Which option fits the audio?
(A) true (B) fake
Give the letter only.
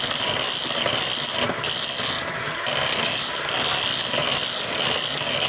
A